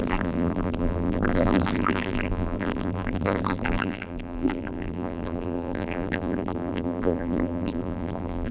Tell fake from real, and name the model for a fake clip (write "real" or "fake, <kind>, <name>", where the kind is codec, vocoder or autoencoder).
fake, vocoder, BigVGAN v2